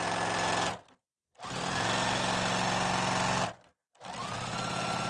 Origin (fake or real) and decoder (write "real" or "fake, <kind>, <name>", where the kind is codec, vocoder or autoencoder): real